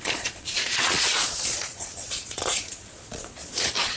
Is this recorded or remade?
remade